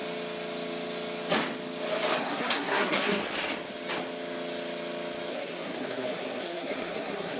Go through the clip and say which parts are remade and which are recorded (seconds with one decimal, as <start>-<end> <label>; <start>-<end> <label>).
0.0-2.2 recorded; 2.2-3.2 remade; 3.2-5.3 recorded; 5.3-7.4 remade